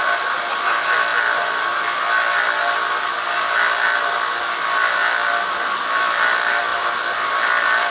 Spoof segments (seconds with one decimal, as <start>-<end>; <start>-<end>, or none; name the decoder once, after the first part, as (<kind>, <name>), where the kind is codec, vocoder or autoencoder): none